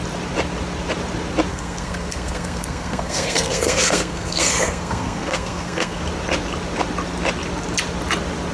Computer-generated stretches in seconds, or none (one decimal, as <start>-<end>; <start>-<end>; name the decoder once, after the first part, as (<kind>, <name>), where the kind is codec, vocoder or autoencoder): 1.5-6.0 (codec, SNAC)